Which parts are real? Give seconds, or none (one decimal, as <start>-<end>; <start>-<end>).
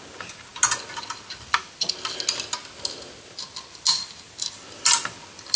0.0-5.6